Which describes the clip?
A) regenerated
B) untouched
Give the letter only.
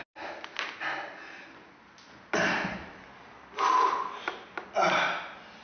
B